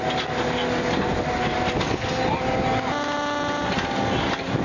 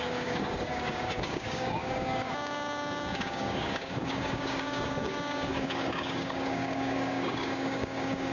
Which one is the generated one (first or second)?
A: second